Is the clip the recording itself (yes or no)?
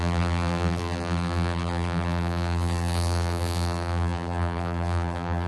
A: no